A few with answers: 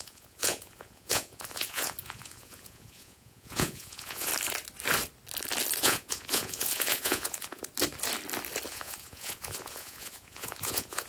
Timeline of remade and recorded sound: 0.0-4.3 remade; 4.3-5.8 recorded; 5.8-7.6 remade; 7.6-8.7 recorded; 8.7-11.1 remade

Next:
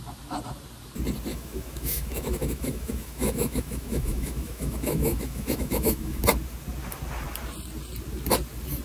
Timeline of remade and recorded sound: 0.0-1.3 recorded; 1.3-6.2 remade; 6.2-8.8 recorded

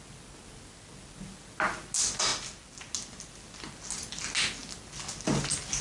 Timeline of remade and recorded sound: 0.0-5.8 recorded

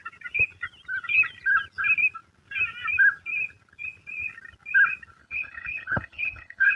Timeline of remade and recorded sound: 0.0-5.2 recorded; 5.2-6.8 remade

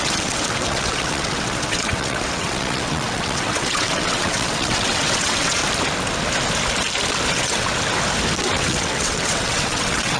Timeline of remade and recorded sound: 0.0-5.6 remade; 5.6-7.3 recorded; 7.3-7.7 remade; 7.7-8.4 recorded; 8.4-10.2 remade